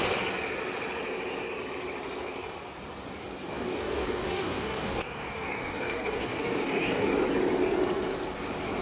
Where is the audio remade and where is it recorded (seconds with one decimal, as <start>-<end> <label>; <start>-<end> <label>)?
0.0-3.4 recorded; 3.4-7.1 remade; 7.1-8.8 recorded